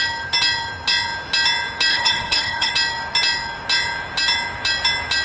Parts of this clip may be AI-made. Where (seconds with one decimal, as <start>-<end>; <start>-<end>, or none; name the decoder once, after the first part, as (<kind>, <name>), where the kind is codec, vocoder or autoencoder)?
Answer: 1.9-2.7 (codec, HILCodec)